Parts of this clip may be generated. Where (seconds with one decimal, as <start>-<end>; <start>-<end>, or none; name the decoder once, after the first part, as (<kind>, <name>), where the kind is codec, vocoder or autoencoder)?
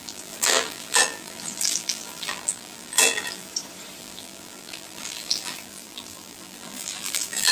0.0-3.5 (vocoder, BigVGAN v2); 4.0-7.5